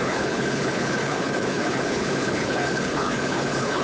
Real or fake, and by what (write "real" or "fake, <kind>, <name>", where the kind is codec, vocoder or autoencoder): fake, codec, HILCodec